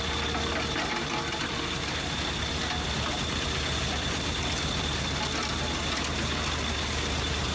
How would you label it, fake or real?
real